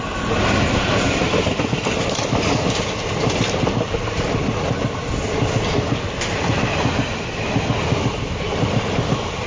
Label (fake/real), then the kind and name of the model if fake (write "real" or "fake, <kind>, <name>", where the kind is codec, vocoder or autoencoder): real